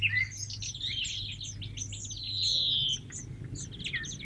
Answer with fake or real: real